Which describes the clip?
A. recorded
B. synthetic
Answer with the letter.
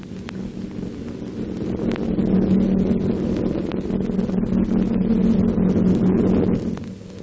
A